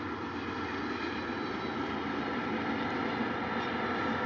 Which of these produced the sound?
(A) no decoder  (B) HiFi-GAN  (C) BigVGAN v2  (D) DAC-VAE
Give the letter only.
A